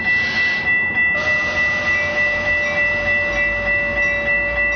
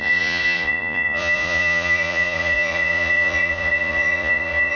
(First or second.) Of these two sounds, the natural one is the first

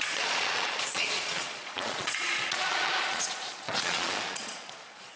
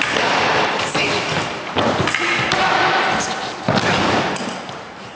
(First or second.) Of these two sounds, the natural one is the second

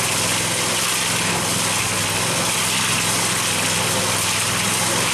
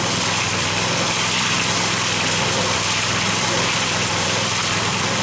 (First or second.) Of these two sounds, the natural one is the first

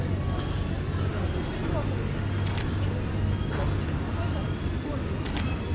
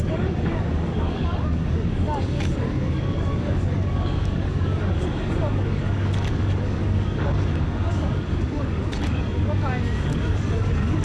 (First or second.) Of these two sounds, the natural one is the first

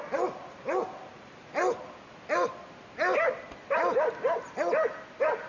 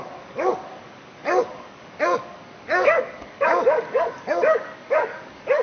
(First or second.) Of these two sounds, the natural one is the first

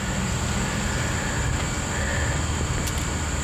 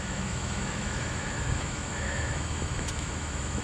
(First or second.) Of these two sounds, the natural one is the first